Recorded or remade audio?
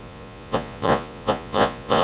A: remade